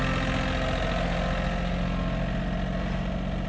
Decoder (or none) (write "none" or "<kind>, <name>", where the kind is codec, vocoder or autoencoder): none